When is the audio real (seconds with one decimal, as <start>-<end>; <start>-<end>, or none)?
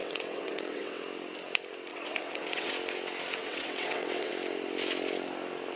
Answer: 1.0-1.9; 2.7-3.4; 4.3-5.8